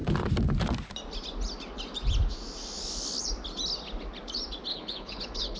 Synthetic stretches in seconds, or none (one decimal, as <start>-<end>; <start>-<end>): 4.7-5.6